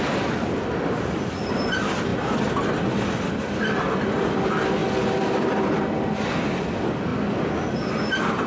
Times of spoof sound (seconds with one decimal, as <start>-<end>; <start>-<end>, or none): none